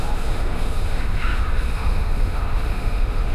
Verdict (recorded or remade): remade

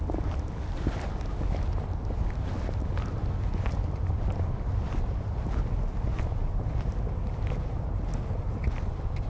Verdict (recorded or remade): recorded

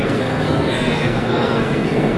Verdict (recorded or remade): remade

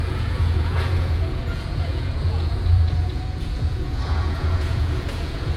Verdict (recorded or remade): remade